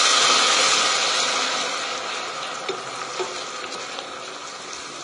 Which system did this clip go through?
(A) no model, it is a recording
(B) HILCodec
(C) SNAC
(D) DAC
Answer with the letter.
A